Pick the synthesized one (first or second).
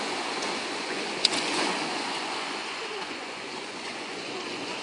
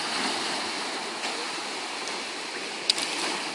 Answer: first